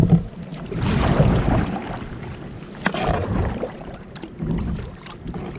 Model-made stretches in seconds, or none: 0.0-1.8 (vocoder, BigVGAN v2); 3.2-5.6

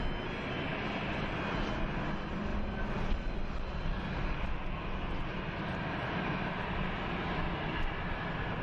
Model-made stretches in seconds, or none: none

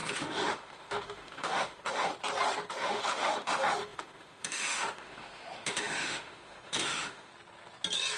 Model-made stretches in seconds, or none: 0.0-2.1 (autoencoder, DAC-VAE); 2.7-7.3